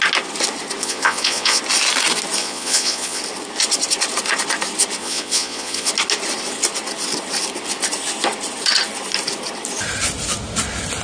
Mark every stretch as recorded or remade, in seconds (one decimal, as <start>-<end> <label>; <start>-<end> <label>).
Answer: 0.0-0.8 recorded; 0.8-1.6 remade; 1.6-2.4 recorded; 2.4-3.2 remade; 3.2-5.0 recorded; 5.0-5.9 remade; 5.9-11.0 recorded